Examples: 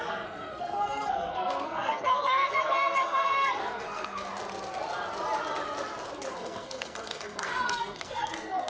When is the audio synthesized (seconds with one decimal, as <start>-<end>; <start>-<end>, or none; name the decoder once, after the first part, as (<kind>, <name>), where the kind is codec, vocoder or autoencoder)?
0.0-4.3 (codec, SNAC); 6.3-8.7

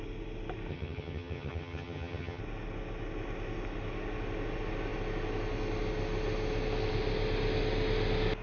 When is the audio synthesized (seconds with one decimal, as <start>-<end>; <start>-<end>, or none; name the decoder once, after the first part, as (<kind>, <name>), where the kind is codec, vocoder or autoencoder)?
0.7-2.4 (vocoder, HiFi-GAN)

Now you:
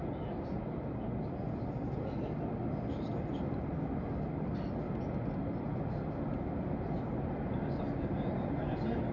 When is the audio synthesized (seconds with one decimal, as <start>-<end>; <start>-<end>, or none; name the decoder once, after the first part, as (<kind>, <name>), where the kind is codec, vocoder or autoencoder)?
none

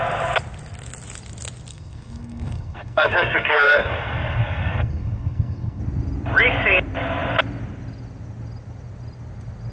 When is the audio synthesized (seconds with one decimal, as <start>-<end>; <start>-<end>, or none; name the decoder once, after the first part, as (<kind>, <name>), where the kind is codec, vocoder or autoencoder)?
1.7-5.8 (codec, SNAC)